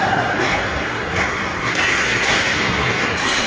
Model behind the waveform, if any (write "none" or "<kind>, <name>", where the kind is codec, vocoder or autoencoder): codec, SNAC